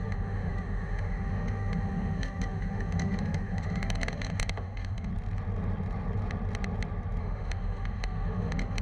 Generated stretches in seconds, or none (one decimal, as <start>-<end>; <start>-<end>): 0.0-5.1; 7.2-8.8